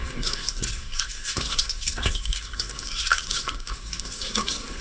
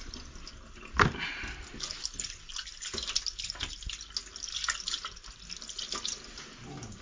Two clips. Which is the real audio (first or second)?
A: second